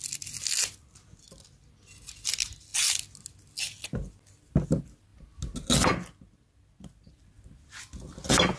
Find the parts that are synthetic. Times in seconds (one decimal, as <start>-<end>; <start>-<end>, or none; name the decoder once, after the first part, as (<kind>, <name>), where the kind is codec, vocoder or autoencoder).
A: none